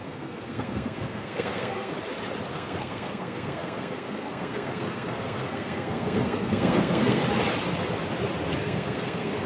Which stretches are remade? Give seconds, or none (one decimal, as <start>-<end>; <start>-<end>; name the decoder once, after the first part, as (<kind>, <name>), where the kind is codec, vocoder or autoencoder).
0.0-1.9 (codec, SNAC); 2.5-7.2; 8.6-9.5